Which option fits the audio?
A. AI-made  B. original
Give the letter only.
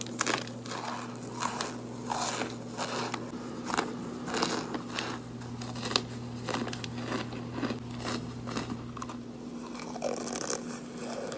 B